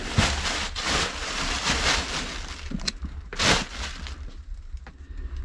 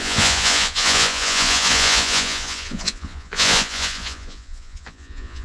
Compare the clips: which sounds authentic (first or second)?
first